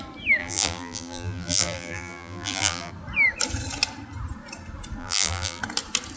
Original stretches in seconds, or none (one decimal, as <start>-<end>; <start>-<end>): 0.0-0.4; 2.9-5.0; 5.6-6.2